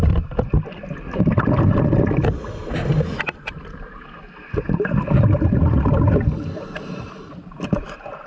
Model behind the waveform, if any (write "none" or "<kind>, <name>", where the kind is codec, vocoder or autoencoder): vocoder, BigVGAN v2